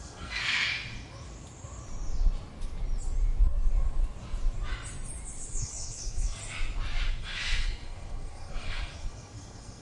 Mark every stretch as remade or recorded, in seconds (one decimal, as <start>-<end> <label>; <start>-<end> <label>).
0.0-0.7 remade; 0.7-5.5 recorded; 5.5-6.4 remade; 6.4-7.1 recorded; 7.1-9.8 remade